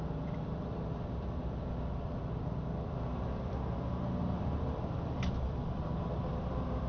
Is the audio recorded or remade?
remade